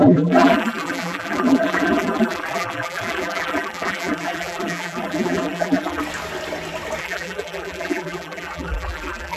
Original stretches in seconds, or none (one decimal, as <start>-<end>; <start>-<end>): 6.0-7.0